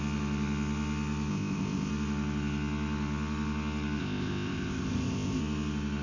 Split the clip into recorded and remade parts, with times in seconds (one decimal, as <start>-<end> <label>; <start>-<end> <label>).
0.0-1.3 recorded; 1.3-1.9 remade; 1.9-4.0 recorded; 4.0-5.4 remade; 5.4-6.0 recorded